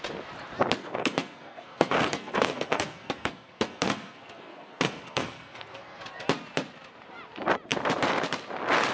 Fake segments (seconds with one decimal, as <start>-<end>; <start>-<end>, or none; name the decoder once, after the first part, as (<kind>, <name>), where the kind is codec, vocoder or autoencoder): 0.8-6.0 (codec, SNAC)